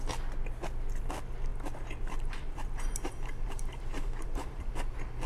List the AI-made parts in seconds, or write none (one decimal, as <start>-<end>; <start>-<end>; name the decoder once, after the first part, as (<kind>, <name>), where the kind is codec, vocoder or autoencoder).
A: 1.5-4.7 (vocoder, BigVGAN v2)